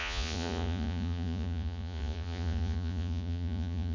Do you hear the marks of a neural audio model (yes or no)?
yes